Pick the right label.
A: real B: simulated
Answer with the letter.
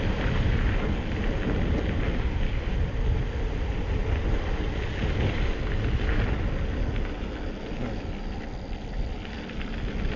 A